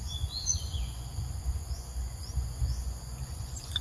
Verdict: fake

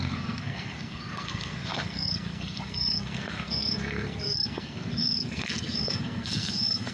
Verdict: fake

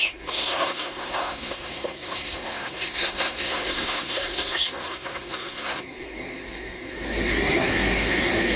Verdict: fake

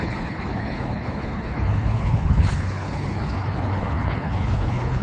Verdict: fake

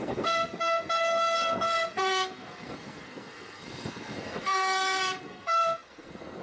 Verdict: fake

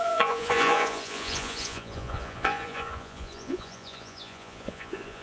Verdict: fake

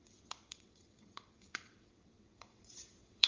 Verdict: fake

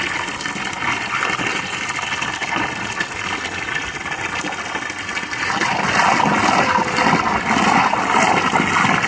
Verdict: real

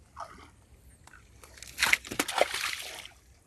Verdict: real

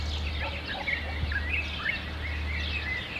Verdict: real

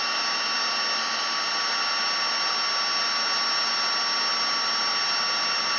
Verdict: real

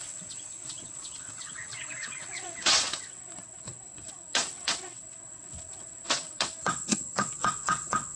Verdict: fake